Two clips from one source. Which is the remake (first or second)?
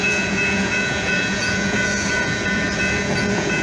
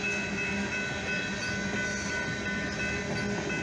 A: first